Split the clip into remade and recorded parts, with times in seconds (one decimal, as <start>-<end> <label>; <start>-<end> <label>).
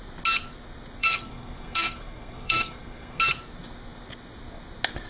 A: 0.0-1.0 recorded; 1.0-3.2 remade; 3.2-5.1 recorded